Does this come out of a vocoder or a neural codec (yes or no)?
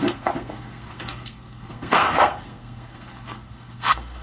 yes